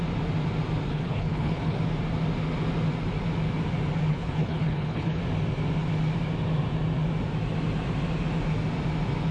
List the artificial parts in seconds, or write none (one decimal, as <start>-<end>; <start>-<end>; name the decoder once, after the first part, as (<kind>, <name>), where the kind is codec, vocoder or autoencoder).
0.9-1.8 (codec, HILCodec); 4.1-5.2